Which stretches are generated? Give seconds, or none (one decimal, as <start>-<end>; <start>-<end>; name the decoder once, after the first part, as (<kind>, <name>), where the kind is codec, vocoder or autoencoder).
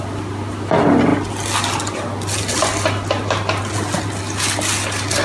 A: none